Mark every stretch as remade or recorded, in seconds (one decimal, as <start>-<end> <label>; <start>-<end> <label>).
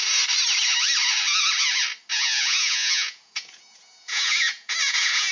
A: 0.0-2.1 recorded; 2.1-5.3 remade